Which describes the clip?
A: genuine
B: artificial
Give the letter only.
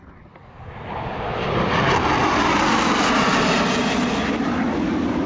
A